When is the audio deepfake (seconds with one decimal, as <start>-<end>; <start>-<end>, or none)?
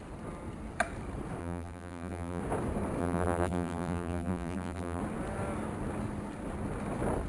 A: 1.4-2.4; 3.0-5.0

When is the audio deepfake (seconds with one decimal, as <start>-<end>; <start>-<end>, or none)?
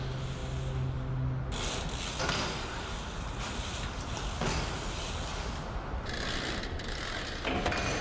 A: none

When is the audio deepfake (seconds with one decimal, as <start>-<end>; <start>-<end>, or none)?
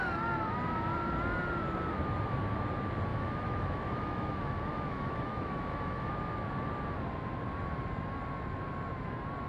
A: 3.1-6.1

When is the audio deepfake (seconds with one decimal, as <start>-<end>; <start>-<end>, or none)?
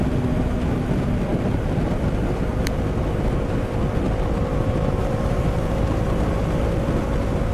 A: 4.5-5.4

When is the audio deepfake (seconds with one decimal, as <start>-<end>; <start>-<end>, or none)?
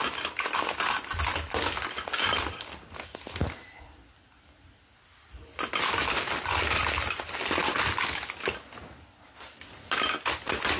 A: none